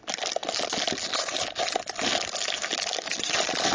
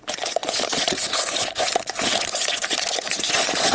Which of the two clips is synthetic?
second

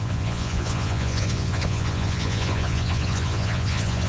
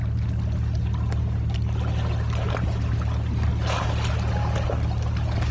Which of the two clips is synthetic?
first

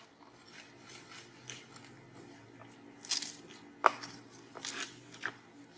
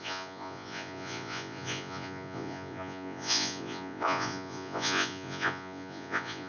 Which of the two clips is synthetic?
second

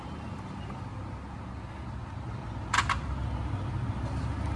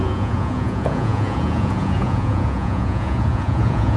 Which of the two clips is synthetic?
second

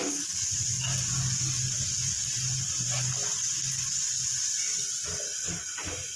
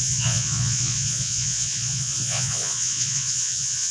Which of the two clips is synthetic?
second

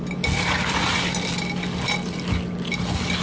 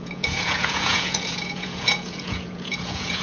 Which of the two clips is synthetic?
second